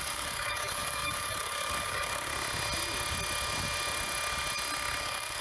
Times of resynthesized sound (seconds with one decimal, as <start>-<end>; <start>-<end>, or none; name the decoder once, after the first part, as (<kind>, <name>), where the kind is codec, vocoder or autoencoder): 0.0-2.3 (codec, DAC); 5.0-5.4